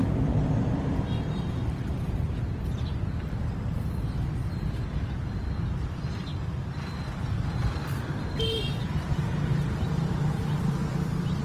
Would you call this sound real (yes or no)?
no